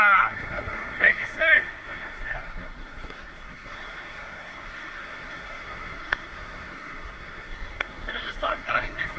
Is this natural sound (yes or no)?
no